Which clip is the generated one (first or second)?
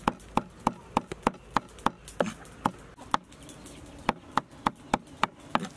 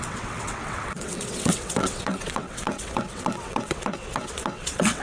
second